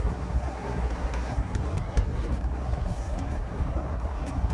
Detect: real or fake fake